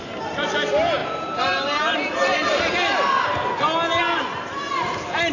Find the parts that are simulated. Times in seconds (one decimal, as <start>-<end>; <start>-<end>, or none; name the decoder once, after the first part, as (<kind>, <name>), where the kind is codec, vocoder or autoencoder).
1.0-2.7 (vocoder, BigVGAN v2)

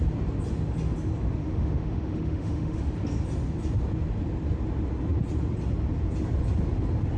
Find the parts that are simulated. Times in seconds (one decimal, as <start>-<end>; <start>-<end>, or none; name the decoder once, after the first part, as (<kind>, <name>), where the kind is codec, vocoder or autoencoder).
1.4-2.8 (autoencoder, DAC-VAE)